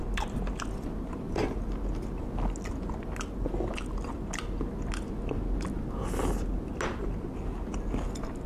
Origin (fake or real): real